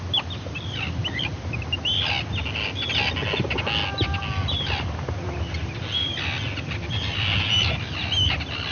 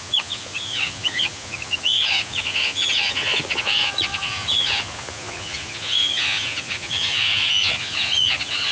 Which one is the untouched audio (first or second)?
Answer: first